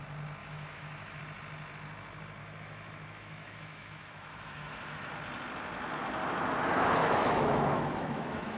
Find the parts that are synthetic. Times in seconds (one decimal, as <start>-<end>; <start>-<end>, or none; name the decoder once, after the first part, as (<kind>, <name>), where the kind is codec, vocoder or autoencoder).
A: 0.4-1.2 (autoencoder, DAC-VAE); 2.4-5.1; 7.0-8.6